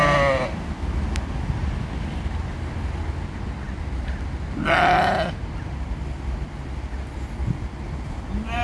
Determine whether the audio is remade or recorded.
recorded